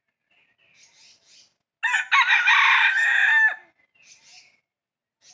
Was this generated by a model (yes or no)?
no